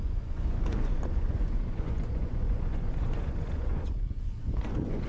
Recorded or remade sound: remade